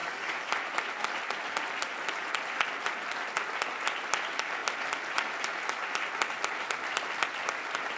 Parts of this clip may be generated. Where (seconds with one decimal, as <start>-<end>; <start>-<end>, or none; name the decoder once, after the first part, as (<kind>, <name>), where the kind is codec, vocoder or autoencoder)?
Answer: 0.0-0.5 (codec, DAC)